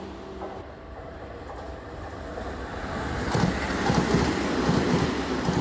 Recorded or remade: recorded